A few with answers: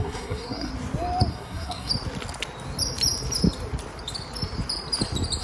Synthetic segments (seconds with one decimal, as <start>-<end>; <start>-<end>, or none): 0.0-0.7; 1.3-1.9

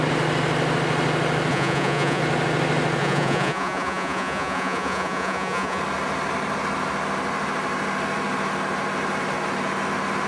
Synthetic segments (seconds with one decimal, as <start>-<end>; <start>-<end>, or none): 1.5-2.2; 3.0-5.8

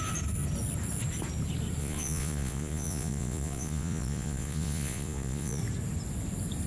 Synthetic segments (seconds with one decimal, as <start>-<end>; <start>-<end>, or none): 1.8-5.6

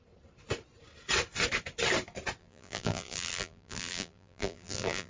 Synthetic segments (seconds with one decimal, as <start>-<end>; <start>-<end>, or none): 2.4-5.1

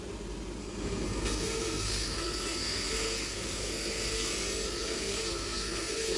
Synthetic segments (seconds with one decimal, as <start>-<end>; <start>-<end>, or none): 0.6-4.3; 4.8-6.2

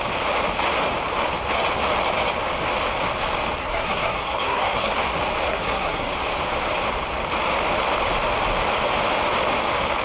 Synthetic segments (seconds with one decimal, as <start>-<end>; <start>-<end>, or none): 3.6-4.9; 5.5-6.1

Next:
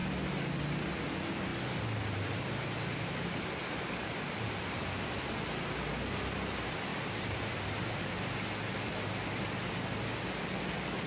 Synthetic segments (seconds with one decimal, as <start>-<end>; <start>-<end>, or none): 6.9-7.4